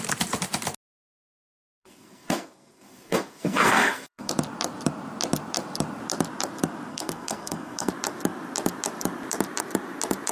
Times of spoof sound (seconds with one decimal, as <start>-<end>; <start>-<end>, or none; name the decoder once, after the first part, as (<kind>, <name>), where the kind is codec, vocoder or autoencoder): 1.8-4.3 (codec, SNAC); 6.9-7.9